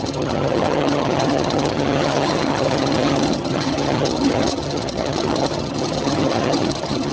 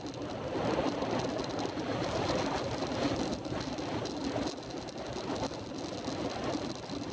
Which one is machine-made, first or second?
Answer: first